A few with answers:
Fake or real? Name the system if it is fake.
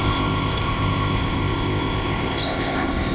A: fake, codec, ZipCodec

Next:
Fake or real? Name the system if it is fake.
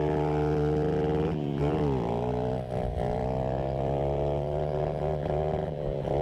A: fake, vocoder, BigVGAN v2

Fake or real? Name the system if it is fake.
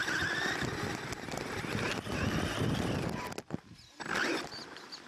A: real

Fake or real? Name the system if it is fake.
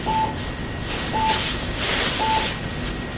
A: real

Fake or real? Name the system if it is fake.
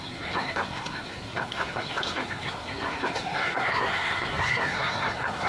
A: fake, codec, SNAC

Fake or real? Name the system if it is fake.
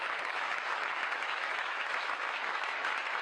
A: fake, autoencoder, DAC-VAE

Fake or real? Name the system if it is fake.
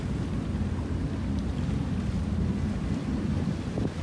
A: real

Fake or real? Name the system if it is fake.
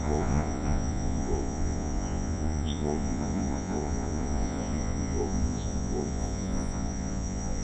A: fake, vocoder, Vocos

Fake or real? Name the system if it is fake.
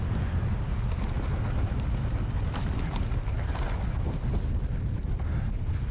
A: real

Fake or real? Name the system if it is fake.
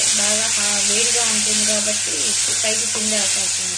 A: real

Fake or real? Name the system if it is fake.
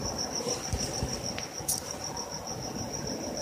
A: fake, vocoder, BigVGAN v2